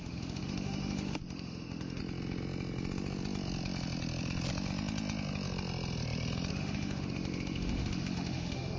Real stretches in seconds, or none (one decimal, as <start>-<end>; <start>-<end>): 2.0-6.5